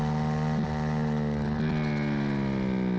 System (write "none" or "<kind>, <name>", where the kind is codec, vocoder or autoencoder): none